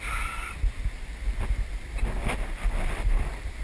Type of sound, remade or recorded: recorded